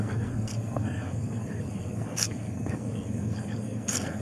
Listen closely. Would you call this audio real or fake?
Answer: fake